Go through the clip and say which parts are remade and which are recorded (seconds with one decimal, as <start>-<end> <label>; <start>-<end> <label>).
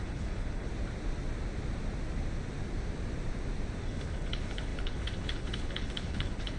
0.0-0.7 remade; 0.7-3.8 recorded; 3.8-6.6 remade